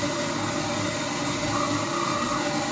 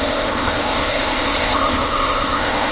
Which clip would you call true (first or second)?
first